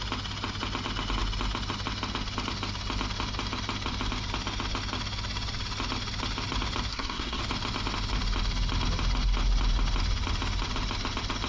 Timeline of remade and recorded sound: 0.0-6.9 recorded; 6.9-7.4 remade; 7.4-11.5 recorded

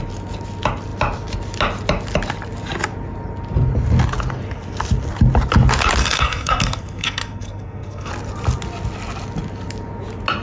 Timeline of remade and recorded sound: 0.0-6.0 recorded; 6.0-8.1 remade; 8.1-10.4 recorded